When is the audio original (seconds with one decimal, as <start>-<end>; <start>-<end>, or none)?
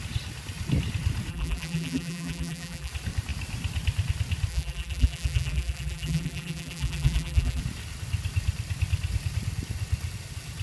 0.0-1.3; 2.9-4.5; 7.6-10.6